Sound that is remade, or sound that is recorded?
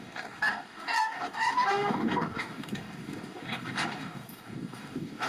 remade